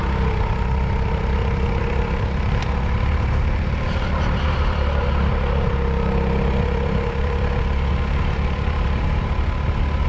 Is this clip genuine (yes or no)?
no